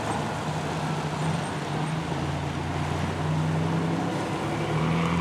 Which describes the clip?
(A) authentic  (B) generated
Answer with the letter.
A